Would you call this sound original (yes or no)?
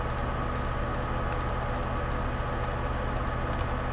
yes